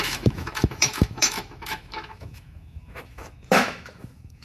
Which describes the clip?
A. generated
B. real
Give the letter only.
A